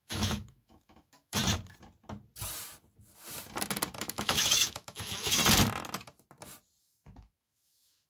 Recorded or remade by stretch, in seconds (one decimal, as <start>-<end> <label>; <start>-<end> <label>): 0.0-1.4 remade; 1.4-4.0 recorded; 4.0-5.4 remade; 5.4-6.8 recorded; 6.8-8.1 remade